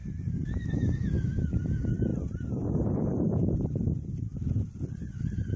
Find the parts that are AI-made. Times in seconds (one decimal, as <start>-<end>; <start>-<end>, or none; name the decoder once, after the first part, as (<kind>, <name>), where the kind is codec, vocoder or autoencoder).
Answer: 2.1-5.6 (vocoder, BigVGAN v2)